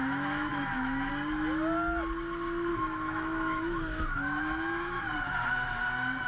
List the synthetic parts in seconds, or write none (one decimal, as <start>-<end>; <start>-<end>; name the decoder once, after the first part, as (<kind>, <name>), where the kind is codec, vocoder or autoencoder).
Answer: 0.0-1.1 (autoencoder, DAC-VAE); 2.7-5.0